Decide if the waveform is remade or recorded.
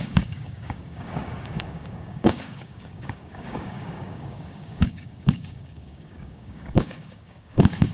remade